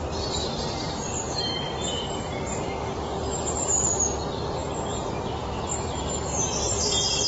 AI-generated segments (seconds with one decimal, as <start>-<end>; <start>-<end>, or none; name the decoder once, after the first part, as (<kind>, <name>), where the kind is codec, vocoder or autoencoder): 0.0-4.6 (vocoder, BigVGAN v2); 5.2-7.3